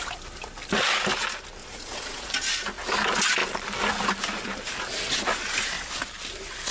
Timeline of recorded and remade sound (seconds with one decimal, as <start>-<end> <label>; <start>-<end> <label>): 0.0-1.6 recorded; 1.6-2.3 remade; 2.3-6.7 recorded